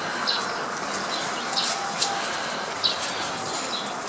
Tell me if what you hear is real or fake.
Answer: real